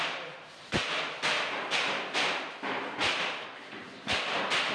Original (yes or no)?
yes